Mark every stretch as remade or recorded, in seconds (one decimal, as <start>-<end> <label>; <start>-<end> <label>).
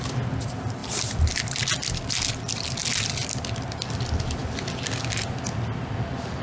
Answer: 0.0-6.4 recorded